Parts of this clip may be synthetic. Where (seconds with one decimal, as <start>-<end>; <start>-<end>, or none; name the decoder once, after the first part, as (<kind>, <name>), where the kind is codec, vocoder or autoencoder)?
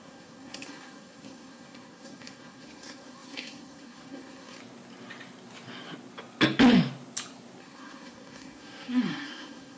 0.0-4.6 (codec, SNAC); 7.6-9.8